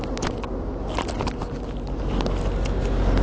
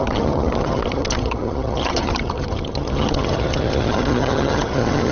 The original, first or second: first